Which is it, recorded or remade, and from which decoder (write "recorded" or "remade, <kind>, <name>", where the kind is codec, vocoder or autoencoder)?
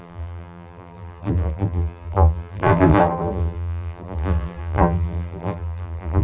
remade, vocoder, BigVGAN v2